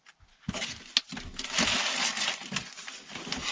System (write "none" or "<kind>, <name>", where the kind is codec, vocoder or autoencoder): none